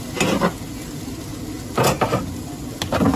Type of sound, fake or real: real